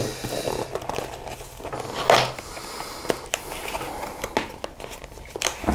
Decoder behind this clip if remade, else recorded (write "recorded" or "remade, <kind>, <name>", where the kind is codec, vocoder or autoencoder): recorded